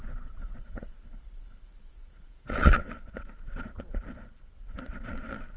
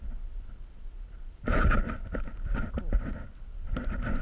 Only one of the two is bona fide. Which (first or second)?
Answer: second